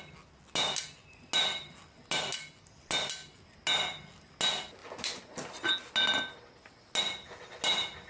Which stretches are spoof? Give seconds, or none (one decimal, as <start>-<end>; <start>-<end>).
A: none